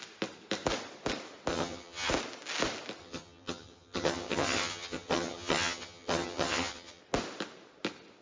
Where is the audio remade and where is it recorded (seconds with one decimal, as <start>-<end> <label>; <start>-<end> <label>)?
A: 0.0-1.5 recorded; 1.5-2.1 remade; 2.1-3.0 recorded; 3.0-7.0 remade; 7.0-8.2 recorded